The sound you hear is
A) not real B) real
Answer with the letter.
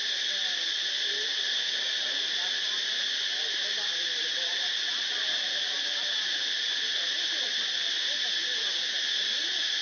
B